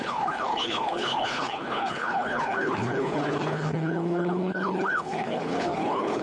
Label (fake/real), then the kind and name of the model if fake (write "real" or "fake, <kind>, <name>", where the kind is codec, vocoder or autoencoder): fake, codec, HILCodec